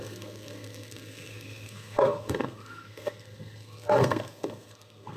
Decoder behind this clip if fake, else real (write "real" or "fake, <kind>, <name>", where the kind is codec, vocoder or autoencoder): fake, codec, SNAC